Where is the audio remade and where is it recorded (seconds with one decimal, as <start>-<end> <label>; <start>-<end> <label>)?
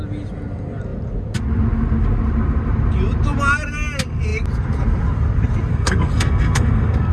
0.0-5.7 recorded; 5.7-7.1 remade